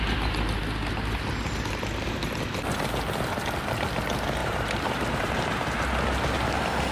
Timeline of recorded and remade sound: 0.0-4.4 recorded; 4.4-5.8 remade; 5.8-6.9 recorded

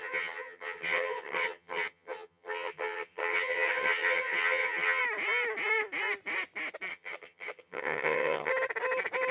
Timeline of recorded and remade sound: 0.0-5.0 remade; 5.0-6.9 recorded; 6.9-8.5 remade; 8.5-9.3 recorded

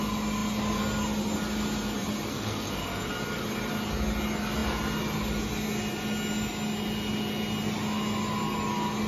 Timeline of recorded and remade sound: 0.0-2.3 recorded; 2.3-3.1 remade; 3.1-9.1 recorded

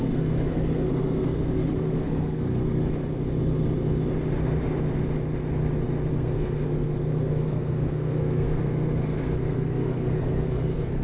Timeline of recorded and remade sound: 0.0-2.8 remade; 2.8-6.1 recorded; 6.1-11.0 remade

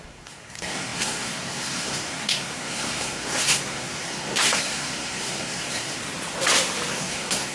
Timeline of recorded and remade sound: 0.0-6.0 remade; 6.0-6.9 recorded; 6.9-7.5 remade

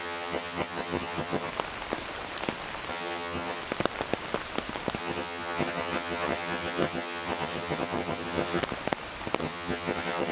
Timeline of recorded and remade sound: 0.0-1.5 remade; 1.5-2.9 recorded; 2.9-3.6 remade; 3.6-5.0 recorded; 5.0-8.6 remade; 8.6-9.4 recorded; 9.4-10.3 remade

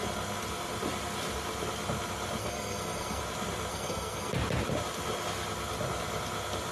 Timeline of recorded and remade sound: 0.0-2.4 recorded; 2.4-3.2 remade; 3.2-3.7 recorded; 3.7-4.3 remade; 4.3-6.7 recorded